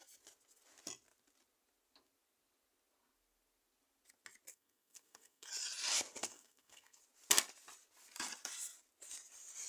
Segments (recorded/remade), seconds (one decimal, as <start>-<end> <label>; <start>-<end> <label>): 0.0-4.5 recorded; 4.5-5.5 remade; 5.5-6.2 recorded; 6.2-7.0 remade; 7.0-9.7 recorded